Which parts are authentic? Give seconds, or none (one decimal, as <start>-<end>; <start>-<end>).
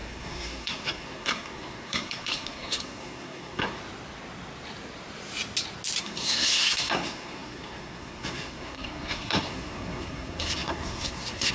3.8-6.0